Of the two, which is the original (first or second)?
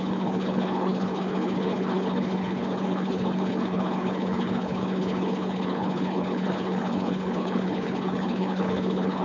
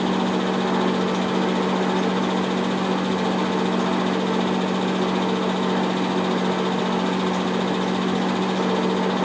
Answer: second